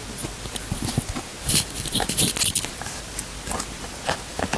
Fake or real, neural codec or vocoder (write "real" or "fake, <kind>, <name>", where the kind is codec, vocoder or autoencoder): real